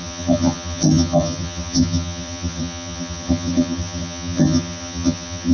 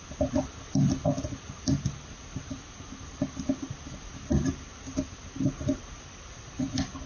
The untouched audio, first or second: second